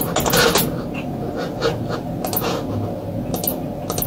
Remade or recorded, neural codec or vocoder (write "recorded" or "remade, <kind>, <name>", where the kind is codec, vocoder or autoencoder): recorded